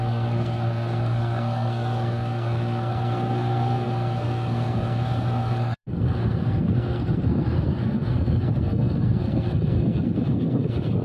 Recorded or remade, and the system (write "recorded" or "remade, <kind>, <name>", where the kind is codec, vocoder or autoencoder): remade, codec, SNAC